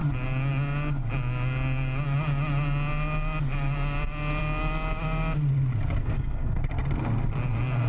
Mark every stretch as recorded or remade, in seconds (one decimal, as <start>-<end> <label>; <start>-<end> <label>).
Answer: 0.0-6.0 recorded; 6.0-6.6 remade; 6.6-7.9 recorded